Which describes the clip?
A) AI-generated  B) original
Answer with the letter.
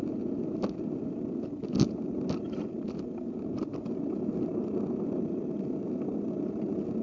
B